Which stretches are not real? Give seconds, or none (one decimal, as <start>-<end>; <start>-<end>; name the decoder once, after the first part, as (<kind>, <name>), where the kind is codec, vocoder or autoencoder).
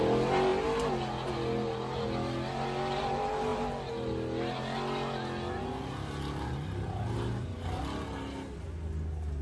none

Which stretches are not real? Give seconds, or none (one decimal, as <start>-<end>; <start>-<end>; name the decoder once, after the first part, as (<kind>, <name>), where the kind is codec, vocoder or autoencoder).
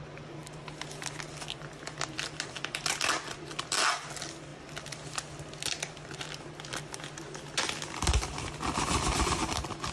none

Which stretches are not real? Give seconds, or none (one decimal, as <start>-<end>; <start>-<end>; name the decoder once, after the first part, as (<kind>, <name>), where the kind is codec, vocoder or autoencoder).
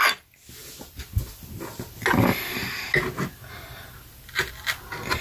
none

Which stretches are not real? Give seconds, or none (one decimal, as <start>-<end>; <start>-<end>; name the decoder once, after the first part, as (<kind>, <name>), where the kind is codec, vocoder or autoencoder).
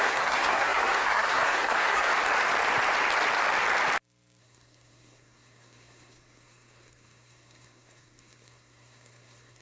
0.0-2.1 (codec, SNAC); 4.4-9.6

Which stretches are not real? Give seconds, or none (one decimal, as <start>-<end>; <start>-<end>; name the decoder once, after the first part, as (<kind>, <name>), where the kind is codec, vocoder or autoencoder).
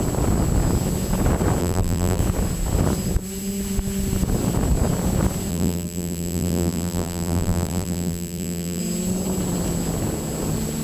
1.6-2.2 (vocoder, BigVGAN v2); 5.5-8.8